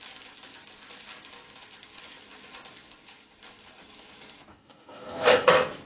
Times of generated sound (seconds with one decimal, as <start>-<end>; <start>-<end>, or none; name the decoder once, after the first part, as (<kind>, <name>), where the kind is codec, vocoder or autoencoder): 4.5-5.5 (codec, DAC)